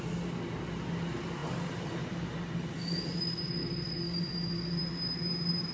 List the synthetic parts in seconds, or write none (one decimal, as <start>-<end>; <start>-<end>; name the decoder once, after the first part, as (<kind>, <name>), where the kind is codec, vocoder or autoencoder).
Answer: none